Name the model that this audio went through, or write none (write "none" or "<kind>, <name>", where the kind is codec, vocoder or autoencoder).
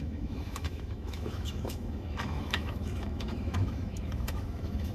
autoencoder, DAC-VAE